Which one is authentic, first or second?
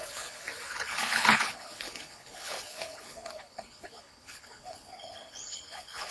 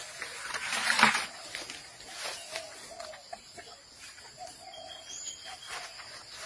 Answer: second